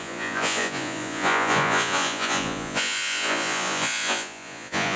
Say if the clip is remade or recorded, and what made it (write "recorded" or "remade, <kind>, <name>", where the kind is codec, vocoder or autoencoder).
remade, vocoder, Vocos